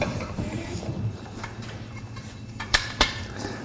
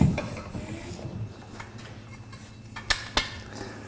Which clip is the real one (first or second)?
second